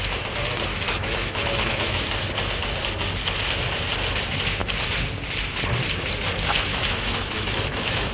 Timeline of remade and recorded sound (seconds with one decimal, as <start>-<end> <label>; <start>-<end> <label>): 0.0-0.7 recorded; 0.7-2.0 remade; 2.0-6.7 recorded; 6.7-8.1 remade